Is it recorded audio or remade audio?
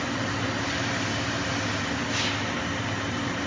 recorded